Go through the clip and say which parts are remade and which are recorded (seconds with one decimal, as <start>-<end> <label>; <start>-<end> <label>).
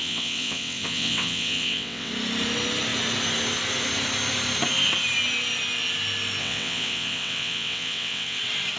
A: 0.0-2.1 remade; 2.1-6.4 recorded; 6.4-8.4 remade; 8.4-8.8 recorded